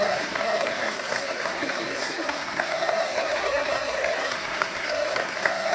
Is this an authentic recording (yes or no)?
no